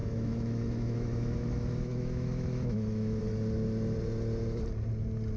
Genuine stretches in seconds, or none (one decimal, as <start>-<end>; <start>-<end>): 3.2-5.4